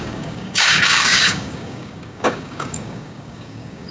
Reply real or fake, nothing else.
fake